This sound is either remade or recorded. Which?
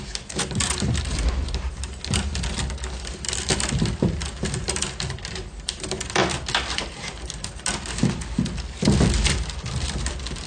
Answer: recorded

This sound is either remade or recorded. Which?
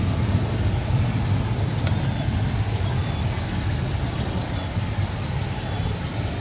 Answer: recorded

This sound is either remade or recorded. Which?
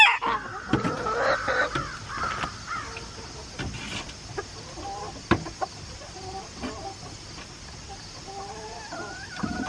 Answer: recorded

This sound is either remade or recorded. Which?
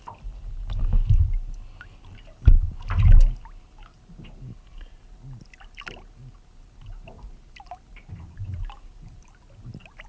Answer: recorded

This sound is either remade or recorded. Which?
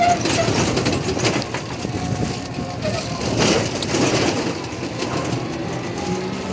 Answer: recorded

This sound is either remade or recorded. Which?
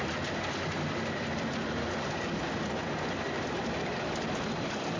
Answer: recorded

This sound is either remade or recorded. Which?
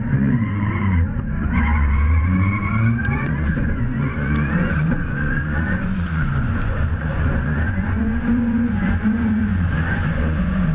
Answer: remade